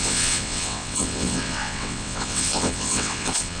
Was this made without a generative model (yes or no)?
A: no